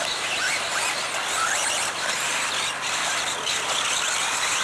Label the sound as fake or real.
real